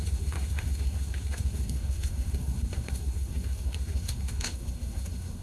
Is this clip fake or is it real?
fake